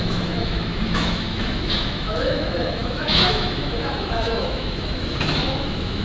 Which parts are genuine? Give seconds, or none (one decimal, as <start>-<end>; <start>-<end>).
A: none